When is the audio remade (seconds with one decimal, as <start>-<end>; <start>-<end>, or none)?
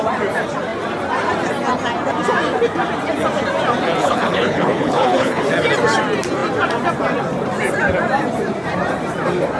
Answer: 4.0-5.4